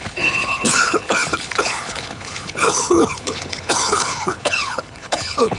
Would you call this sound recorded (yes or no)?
no